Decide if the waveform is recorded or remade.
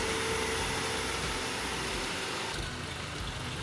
recorded